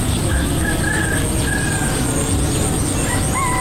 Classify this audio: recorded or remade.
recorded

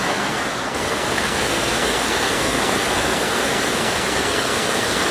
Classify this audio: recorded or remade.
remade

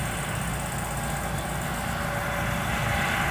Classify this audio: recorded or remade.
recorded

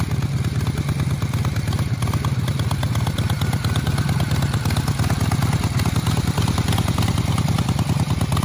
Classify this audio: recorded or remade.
recorded